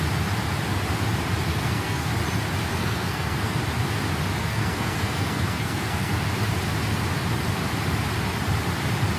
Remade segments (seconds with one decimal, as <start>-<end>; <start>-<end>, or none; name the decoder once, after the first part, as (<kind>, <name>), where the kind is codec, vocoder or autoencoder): 1.5-2.1 (codec, SNAC); 2.7-3.6; 4.4-6.1